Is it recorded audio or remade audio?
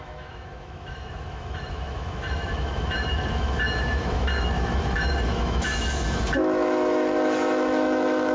remade